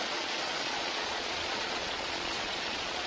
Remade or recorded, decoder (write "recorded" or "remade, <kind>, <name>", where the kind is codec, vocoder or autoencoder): remade, vocoder, Vocos